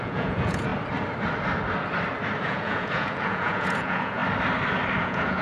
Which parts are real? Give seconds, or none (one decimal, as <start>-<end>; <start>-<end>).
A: 0.7-2.4; 4.2-5.0